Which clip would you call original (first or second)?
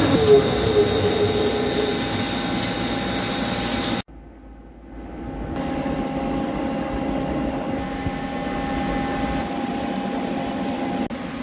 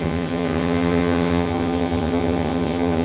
first